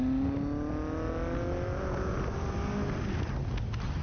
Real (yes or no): yes